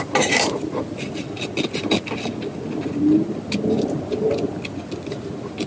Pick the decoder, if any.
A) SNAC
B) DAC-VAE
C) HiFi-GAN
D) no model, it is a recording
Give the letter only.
D